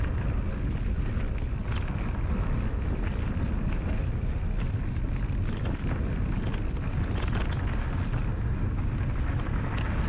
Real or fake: real